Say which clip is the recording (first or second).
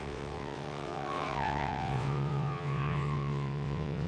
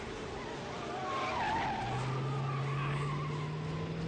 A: second